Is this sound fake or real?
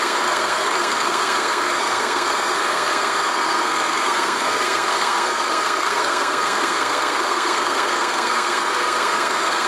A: fake